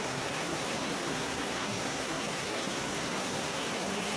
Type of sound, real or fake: fake